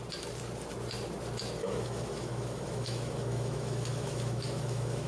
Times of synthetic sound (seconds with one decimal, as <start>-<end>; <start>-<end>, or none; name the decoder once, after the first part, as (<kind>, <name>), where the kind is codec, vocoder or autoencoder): 1.6-5.1 (autoencoder, DAC-VAE)